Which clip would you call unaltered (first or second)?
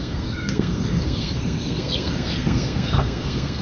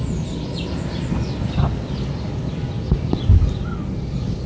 second